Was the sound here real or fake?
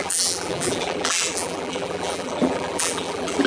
fake